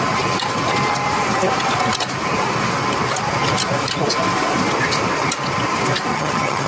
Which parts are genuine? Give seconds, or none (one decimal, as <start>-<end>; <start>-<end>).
0.0-6.1